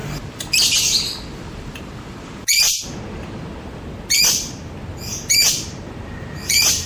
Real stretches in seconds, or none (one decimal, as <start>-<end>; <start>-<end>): 1.8-2.5